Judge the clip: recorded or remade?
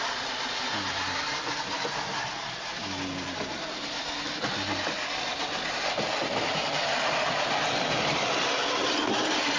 recorded